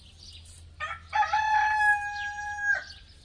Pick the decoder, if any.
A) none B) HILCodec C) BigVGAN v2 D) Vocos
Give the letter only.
A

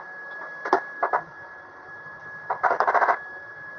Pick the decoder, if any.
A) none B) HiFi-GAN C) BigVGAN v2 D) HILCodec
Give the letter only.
A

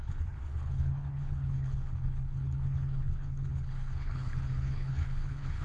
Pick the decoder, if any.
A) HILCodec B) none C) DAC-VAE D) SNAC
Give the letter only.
A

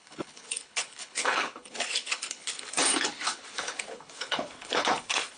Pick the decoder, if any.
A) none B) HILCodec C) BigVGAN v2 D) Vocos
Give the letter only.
B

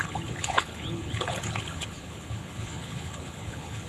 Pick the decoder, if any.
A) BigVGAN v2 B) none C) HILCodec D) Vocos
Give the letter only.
C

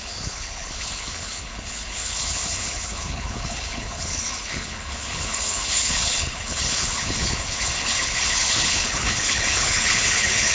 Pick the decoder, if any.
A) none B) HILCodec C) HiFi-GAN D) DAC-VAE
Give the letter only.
B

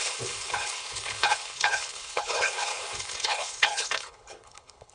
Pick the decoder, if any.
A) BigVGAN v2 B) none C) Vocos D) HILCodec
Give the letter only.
D